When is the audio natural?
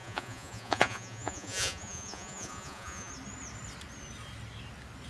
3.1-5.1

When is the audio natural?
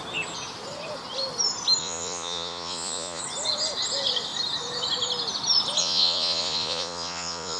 0.0-1.8; 3.2-5.8